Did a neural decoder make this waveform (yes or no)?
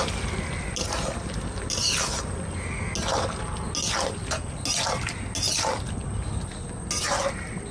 no